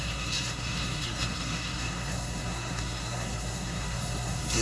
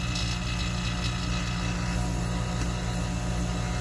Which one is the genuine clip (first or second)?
second